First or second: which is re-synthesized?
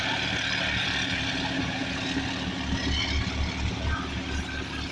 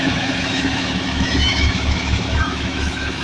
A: second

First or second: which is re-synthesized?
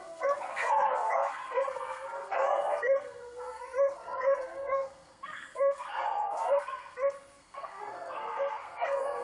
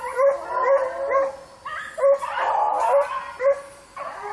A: first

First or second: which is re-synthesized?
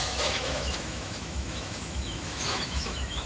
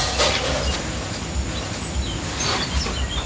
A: first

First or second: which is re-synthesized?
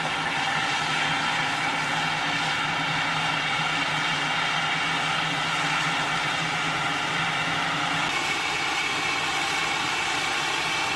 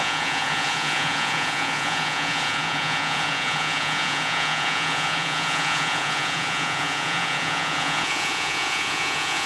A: second